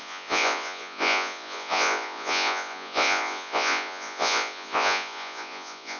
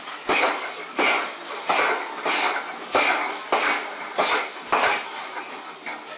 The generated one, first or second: first